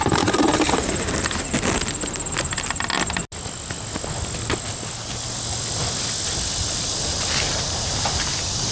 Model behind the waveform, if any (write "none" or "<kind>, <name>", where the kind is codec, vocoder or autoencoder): none